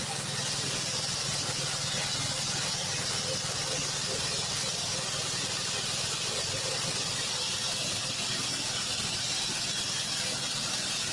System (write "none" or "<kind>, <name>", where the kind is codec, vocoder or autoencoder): none